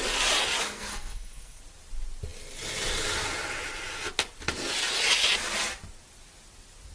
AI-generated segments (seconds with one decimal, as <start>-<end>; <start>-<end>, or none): 0.6-1.6